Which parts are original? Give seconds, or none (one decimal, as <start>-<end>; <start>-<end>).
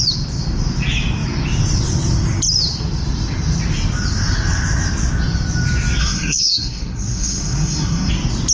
0.0-6.0; 8.1-8.5